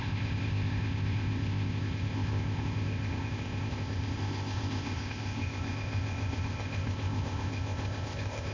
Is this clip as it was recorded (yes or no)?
no